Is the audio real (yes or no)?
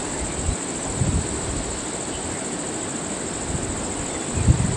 yes